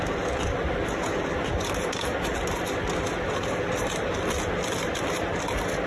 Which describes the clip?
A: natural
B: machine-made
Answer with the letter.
A